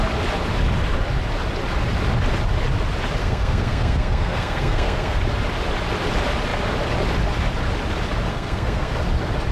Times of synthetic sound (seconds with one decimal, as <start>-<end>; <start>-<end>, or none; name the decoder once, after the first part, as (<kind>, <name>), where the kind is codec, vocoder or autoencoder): 3.2-5.2 (codec, SNAC); 8.3-8.9